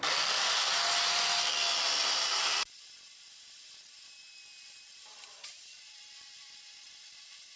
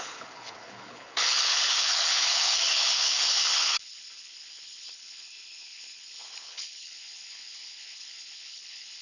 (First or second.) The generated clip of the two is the second